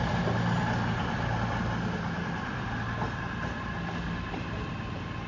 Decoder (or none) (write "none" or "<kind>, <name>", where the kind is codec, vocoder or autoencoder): none